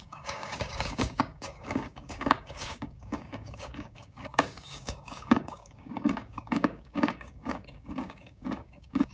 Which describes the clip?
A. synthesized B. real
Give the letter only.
A